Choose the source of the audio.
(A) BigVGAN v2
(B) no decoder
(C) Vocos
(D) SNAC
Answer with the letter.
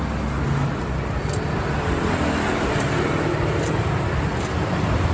B